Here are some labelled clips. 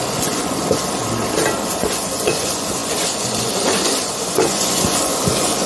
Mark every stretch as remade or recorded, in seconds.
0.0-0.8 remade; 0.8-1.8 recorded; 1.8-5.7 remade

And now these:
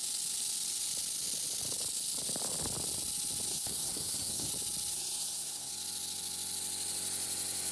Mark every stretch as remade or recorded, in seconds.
0.0-3.5 recorded; 3.5-4.5 remade; 4.5-4.9 recorded; 4.9-5.7 remade; 5.7-7.7 recorded

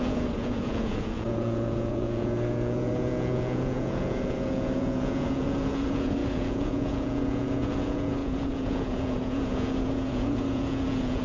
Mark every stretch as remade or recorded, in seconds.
0.0-11.2 remade

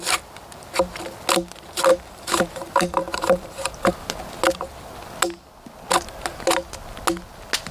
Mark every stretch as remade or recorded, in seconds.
0.0-1.9 recorded; 1.9-3.9 remade; 3.9-7.7 recorded

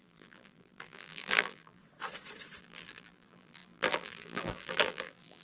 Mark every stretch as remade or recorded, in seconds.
0.0-1.8 remade; 1.8-2.6 recorded; 2.6-5.4 remade